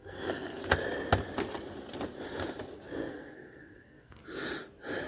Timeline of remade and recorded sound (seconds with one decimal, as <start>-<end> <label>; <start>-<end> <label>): 0.0-0.6 remade; 0.6-3.1 recorded; 3.1-4.2 remade; 4.2-5.1 recorded